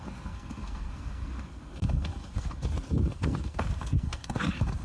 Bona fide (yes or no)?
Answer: no